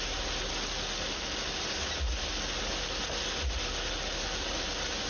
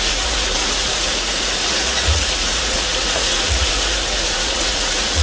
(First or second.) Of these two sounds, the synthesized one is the second